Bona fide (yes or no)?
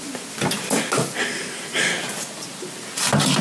yes